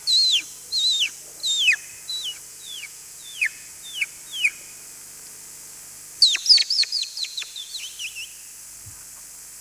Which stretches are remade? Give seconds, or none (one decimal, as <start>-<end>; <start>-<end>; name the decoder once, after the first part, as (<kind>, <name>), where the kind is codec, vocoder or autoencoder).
2.5-3.7 (vocoder, Vocos); 6.6-7.7